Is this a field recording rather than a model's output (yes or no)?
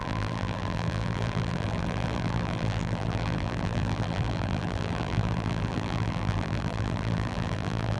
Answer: no